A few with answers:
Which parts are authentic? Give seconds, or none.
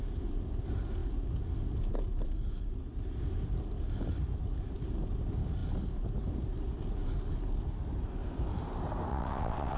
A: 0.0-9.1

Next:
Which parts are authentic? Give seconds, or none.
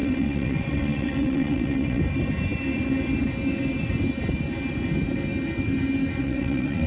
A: 2.0-6.2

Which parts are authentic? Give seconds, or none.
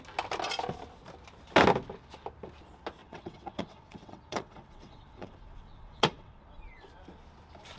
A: 0.0-3.0; 6.4-7.8